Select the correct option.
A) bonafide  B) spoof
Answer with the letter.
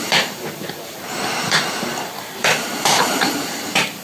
B